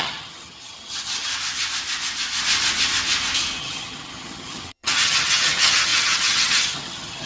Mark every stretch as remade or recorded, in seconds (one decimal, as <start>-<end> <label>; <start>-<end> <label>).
0.0-1.3 remade; 1.3-3.6 recorded; 3.6-7.3 remade